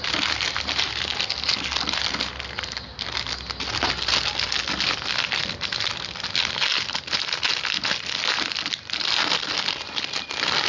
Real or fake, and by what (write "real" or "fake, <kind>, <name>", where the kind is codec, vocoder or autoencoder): real